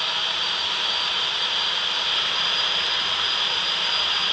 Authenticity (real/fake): real